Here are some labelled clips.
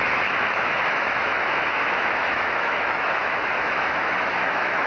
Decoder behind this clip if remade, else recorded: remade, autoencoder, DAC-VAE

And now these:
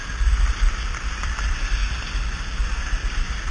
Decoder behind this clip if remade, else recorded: recorded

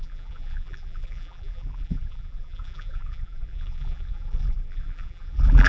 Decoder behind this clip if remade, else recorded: remade, vocoder, BigVGAN v2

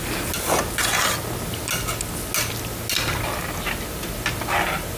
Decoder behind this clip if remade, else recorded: recorded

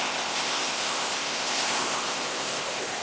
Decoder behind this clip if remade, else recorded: remade, codec, ZipCodec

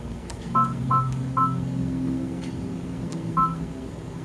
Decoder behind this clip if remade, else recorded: remade, codec, SNAC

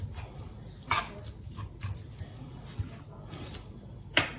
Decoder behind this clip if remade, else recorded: recorded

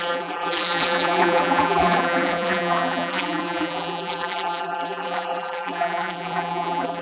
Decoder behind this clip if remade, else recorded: remade, vocoder, BigVGAN v2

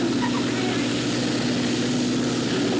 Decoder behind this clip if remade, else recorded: recorded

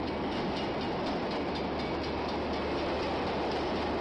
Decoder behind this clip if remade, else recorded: recorded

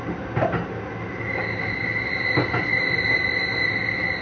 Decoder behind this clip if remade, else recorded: recorded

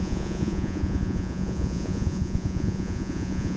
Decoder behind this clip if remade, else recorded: remade, vocoder, Vocos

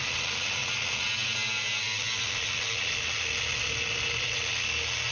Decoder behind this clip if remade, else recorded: recorded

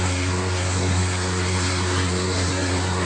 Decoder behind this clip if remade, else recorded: remade, codec, SNAC